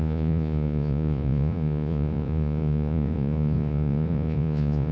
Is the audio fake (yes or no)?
yes